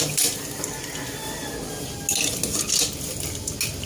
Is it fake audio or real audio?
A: real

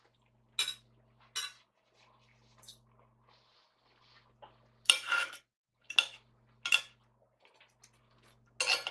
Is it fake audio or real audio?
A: real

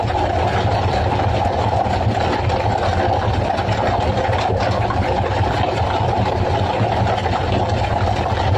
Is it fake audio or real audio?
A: real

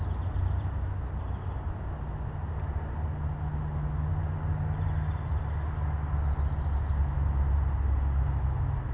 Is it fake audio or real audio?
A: real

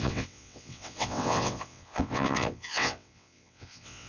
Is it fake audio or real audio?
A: fake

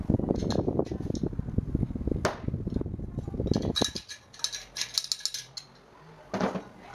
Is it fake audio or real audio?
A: real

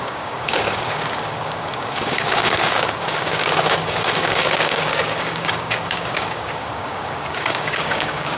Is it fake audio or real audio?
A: fake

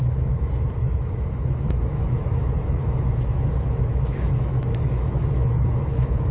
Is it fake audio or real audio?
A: fake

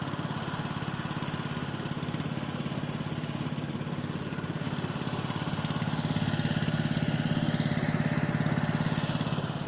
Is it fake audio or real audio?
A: real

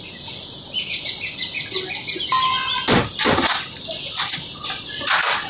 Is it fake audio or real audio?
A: real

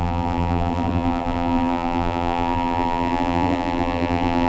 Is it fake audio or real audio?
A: fake